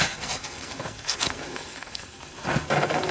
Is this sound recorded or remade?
remade